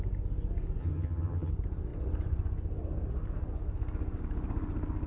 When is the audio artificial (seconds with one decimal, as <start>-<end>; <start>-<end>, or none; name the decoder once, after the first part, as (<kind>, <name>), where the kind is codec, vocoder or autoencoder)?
0.8-1.5 (vocoder, HiFi-GAN)